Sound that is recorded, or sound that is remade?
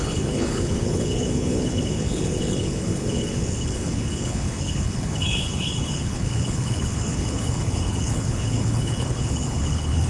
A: remade